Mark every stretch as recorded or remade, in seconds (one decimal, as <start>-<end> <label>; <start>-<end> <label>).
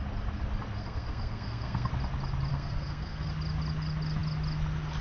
0.0-0.8 recorded; 0.8-1.9 remade; 1.9-2.5 recorded; 2.5-3.3 remade; 3.3-5.0 recorded